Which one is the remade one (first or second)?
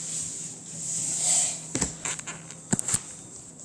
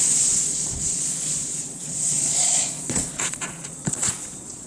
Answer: second